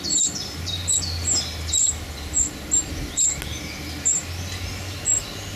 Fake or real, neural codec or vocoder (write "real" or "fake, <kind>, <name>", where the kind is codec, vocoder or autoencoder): real